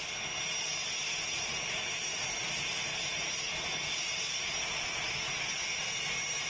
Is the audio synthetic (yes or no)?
no